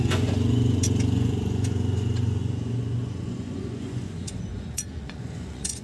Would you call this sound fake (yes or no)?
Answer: yes